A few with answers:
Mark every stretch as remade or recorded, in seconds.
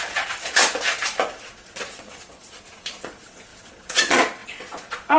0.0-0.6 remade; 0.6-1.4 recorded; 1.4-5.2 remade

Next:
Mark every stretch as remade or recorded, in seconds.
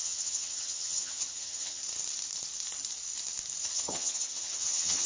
0.0-1.8 remade; 1.8-3.6 recorded; 3.6-5.1 remade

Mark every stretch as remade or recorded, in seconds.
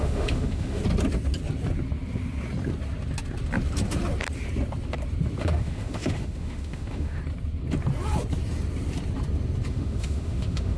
0.0-0.8 remade; 0.8-5.4 recorded; 5.4-7.2 remade; 7.2-9.7 recorded; 9.7-10.8 remade